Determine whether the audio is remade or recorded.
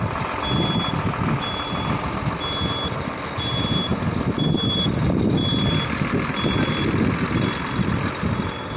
recorded